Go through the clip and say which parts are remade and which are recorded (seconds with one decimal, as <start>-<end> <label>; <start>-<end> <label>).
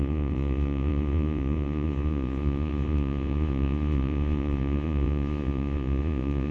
0.0-6.5 remade